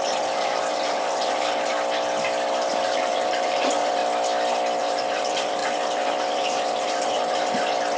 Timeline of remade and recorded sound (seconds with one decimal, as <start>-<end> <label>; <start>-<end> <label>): 0.0-1.7 remade; 1.7-2.7 recorded; 2.7-4.0 remade; 4.0-4.8 recorded; 4.8-8.0 remade